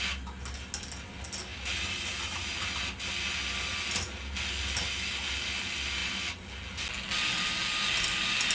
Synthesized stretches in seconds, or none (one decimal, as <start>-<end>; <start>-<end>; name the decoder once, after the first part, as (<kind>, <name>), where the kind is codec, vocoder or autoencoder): none